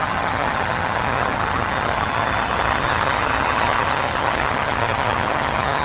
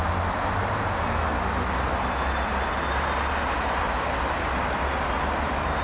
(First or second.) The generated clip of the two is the first